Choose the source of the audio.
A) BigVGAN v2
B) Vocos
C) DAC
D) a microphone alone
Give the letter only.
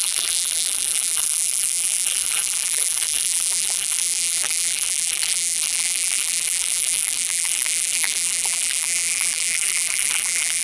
A